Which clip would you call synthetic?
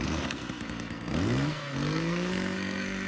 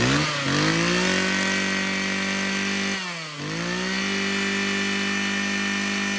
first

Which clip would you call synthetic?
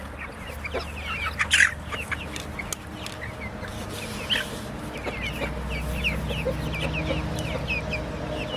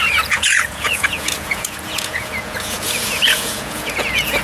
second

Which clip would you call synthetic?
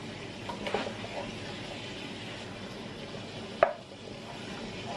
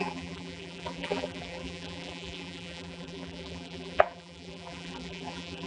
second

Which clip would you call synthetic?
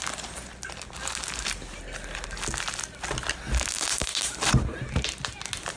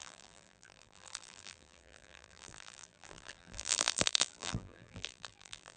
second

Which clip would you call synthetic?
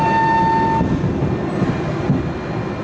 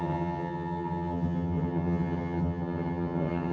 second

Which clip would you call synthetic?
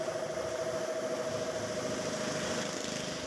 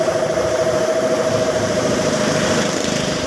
second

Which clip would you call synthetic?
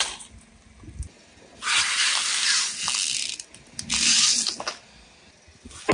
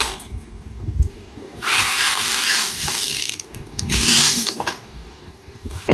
second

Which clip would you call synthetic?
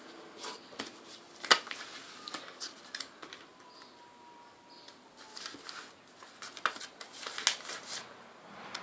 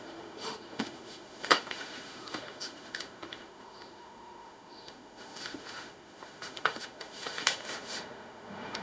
second